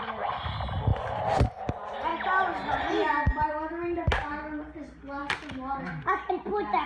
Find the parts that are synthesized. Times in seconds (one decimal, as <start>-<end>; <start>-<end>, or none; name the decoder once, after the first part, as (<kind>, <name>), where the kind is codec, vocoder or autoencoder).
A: none